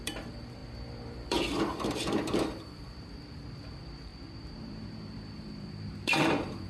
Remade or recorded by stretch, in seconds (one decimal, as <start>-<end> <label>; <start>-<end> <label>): 0.0-6.7 remade